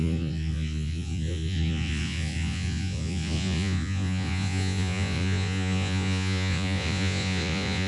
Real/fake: fake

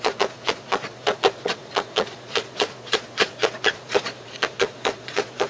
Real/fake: fake